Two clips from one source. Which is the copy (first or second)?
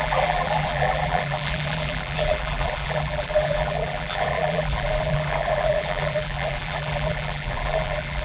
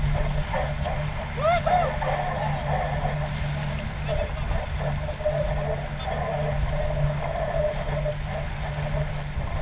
first